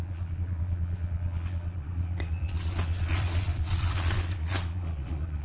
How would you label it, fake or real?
fake